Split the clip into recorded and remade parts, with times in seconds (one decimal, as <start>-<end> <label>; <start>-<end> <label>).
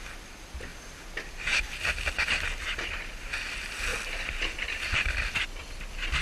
0.0-0.7 remade; 0.7-1.2 recorded; 1.2-3.9 remade; 3.9-4.6 recorded; 4.6-6.2 remade